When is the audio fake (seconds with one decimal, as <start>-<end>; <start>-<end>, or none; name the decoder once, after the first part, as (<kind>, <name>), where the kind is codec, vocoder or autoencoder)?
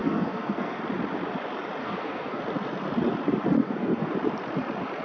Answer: 0.0-0.8 (codec, SNAC); 1.8-2.4; 3.6-4.1